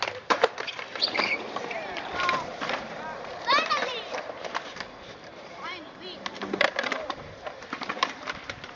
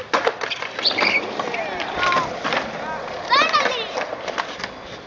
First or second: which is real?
second